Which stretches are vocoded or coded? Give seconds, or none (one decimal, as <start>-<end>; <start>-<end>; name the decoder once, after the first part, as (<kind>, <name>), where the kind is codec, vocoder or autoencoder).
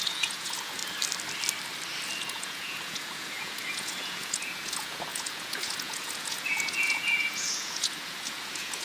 0.0-0.8 (vocoder, Vocos); 2.2-8.8